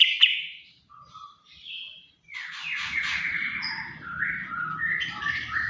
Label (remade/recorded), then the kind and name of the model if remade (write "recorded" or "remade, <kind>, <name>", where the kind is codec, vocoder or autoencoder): remade, vocoder, BigVGAN v2